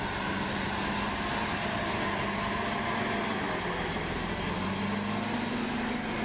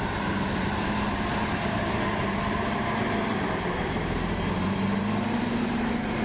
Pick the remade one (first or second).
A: second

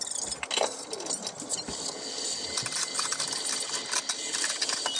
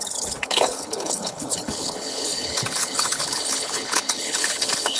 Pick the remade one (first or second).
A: second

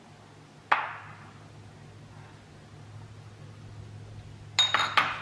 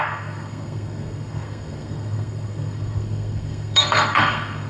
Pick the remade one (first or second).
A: second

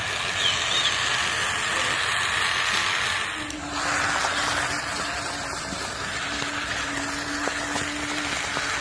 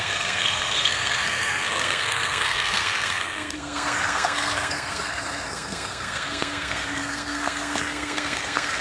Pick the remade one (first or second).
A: second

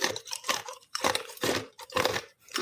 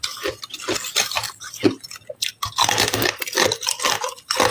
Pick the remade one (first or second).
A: first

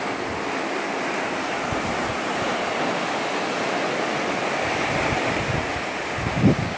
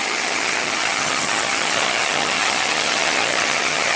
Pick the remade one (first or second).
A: second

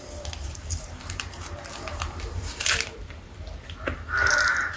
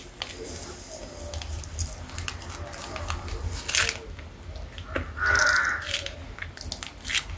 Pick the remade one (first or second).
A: first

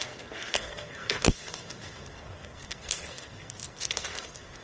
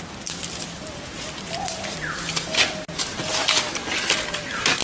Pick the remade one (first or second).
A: first